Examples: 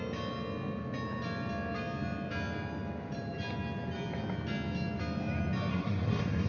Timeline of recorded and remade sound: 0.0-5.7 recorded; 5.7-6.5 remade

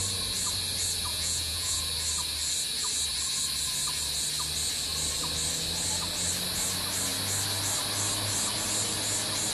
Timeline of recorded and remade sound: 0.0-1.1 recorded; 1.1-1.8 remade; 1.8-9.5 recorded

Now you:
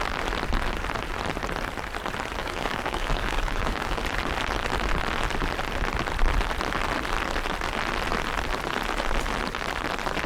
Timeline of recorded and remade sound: 0.0-2.4 recorded; 2.4-4.0 remade; 4.0-10.3 recorded